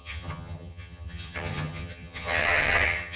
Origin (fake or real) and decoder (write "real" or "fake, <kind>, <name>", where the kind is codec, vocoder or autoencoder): fake, vocoder, HiFi-GAN